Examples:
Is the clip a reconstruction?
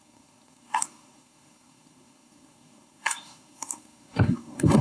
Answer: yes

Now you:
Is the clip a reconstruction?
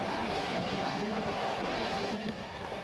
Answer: yes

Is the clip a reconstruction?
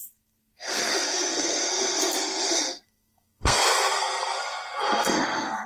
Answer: yes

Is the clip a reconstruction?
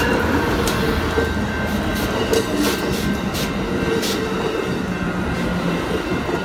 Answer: no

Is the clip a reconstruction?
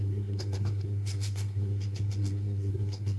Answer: yes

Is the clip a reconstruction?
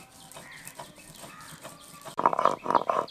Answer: no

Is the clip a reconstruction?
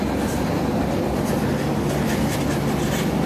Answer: no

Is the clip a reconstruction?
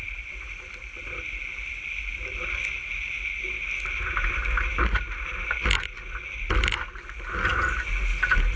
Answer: no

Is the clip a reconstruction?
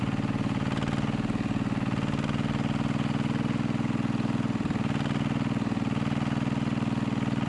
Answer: no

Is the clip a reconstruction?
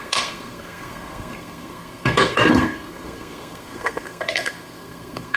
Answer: yes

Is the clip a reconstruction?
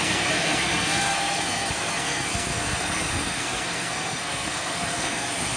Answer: yes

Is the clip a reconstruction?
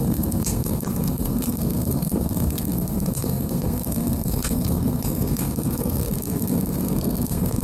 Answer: yes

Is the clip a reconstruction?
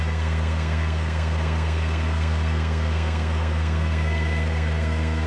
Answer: yes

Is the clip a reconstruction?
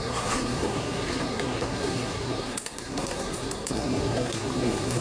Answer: yes